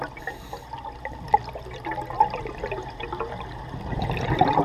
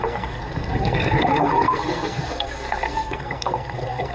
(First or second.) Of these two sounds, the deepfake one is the second